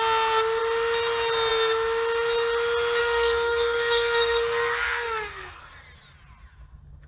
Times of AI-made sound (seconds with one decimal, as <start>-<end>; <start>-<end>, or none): 3.0-5.6